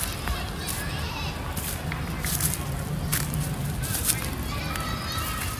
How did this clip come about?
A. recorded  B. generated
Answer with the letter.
A